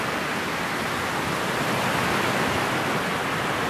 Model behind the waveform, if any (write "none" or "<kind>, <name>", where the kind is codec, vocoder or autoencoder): none